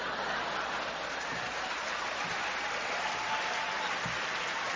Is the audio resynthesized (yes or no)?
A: no